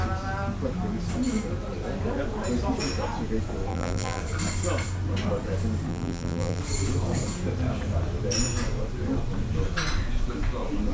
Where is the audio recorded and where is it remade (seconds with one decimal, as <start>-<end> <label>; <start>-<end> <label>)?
0.0-3.7 recorded; 3.7-4.2 remade; 4.2-5.9 recorded; 5.9-6.6 remade; 6.6-10.9 recorded